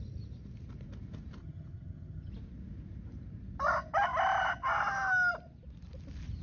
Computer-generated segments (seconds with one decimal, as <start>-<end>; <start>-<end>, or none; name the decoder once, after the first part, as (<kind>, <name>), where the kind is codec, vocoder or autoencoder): 1.4-2.3 (vocoder, HiFi-GAN)